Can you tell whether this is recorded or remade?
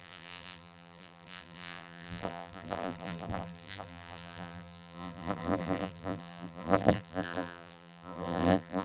remade